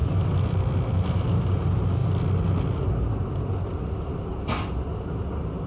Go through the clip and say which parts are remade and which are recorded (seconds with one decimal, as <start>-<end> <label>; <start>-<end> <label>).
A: 0.0-1.3 remade; 1.3-5.7 recorded